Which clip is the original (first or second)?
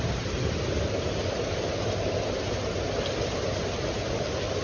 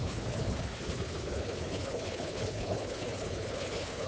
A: first